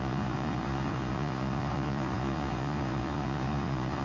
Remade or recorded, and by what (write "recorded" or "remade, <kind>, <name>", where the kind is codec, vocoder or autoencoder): remade, vocoder, Vocos